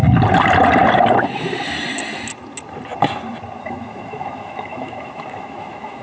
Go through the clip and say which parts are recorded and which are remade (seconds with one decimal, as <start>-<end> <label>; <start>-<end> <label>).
0.0-3.6 recorded; 3.6-6.0 remade